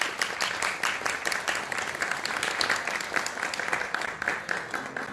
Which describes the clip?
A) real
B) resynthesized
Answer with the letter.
A